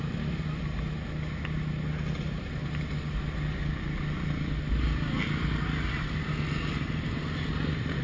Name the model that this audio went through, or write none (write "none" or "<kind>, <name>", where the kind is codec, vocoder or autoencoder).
none